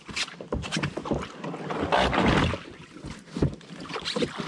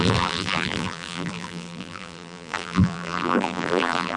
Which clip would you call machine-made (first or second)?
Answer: second